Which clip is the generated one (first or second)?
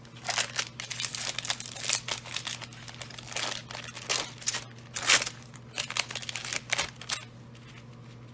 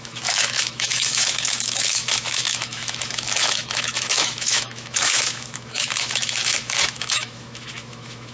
second